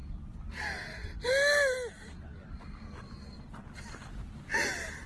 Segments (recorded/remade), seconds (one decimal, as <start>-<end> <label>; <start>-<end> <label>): 0.0-5.1 recorded